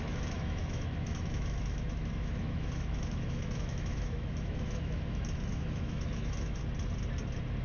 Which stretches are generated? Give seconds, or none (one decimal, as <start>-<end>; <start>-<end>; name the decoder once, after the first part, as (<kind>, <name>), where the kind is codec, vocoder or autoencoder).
0.0-6.6 (autoencoder, DAC-VAE)